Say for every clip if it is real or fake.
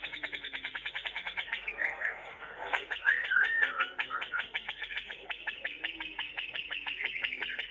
fake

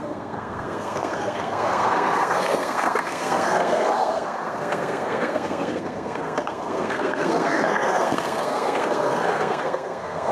fake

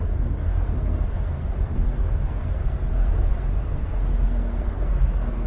fake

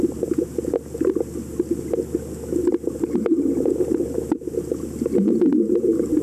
real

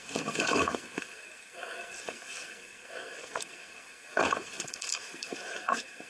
fake